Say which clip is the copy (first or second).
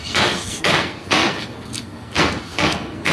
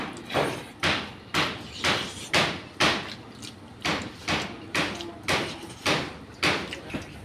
first